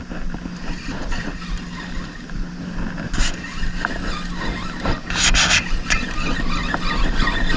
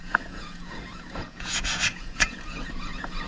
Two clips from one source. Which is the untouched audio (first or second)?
first